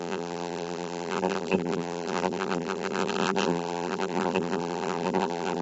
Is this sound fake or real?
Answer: fake